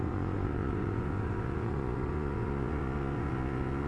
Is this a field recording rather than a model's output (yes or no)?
no